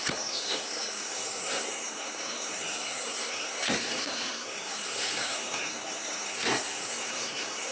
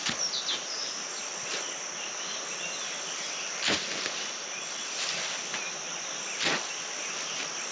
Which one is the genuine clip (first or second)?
second